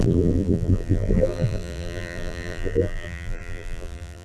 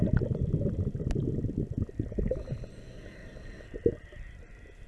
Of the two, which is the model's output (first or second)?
first